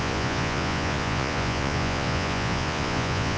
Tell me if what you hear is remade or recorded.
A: remade